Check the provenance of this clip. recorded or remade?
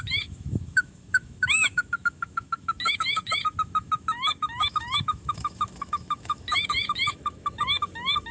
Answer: remade